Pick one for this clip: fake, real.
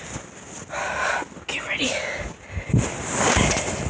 real